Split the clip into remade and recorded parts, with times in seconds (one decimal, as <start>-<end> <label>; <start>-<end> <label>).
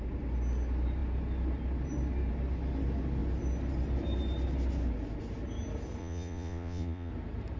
0.0-6.0 recorded; 6.0-7.1 remade; 7.1-7.6 recorded